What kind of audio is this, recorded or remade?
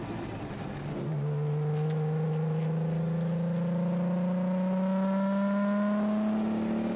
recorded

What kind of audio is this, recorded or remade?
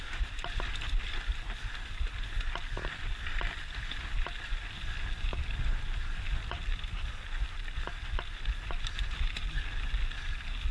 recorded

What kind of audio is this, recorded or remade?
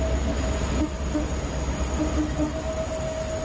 recorded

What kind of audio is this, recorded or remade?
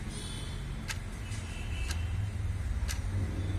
recorded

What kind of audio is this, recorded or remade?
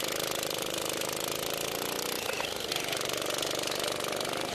recorded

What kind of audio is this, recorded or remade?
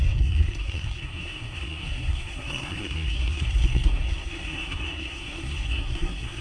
remade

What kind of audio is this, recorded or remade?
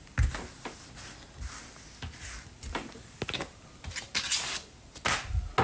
recorded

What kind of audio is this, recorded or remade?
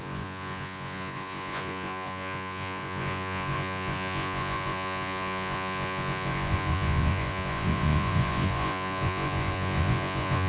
remade